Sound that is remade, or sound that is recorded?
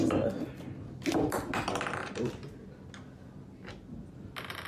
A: recorded